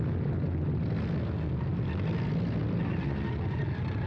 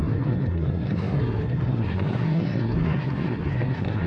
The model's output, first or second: second